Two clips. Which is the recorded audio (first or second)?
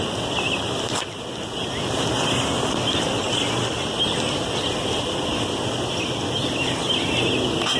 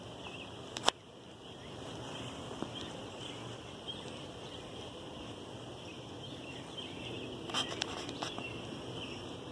first